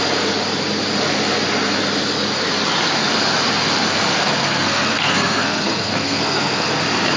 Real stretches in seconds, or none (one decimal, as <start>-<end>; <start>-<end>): 0.0-4.1; 6.8-7.2